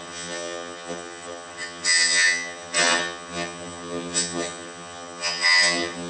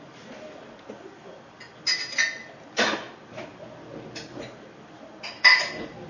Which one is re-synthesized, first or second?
first